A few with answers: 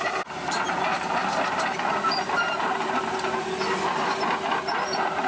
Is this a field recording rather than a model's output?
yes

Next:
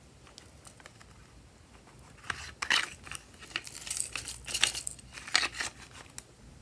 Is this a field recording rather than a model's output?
yes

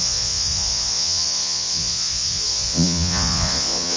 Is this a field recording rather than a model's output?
no